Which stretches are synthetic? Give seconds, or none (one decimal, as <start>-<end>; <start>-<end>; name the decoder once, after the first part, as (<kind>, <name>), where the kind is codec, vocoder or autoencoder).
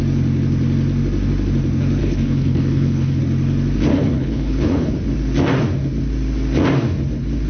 2.0-3.2 (codec, HILCodec); 3.9-4.9